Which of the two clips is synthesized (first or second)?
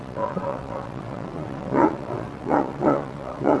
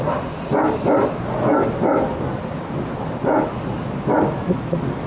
first